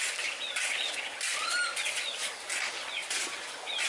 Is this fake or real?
real